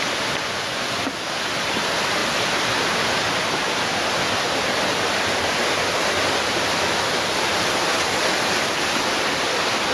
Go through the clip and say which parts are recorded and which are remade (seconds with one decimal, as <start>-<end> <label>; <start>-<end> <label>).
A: 0.0-0.4 recorded; 0.4-1.0 remade; 1.0-9.9 recorded